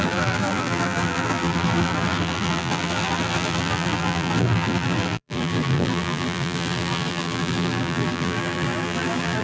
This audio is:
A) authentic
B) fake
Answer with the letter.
B